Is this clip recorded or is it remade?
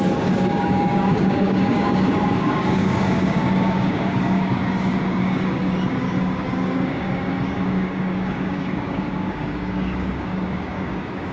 remade